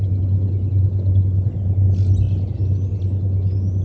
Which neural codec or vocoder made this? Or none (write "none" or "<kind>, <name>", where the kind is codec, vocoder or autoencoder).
none